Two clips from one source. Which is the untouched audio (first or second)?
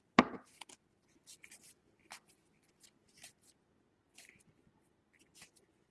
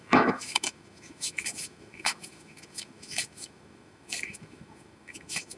first